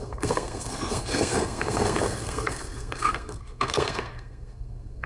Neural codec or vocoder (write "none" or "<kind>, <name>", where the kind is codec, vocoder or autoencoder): codec, SNAC